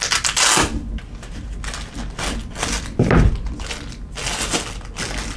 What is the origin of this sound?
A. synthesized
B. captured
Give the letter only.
B